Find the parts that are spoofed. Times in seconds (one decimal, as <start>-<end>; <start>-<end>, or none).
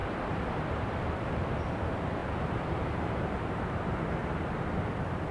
0.0-1.3; 2.2-3.9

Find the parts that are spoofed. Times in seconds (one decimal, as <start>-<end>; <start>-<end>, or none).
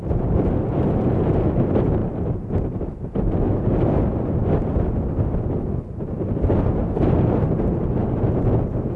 none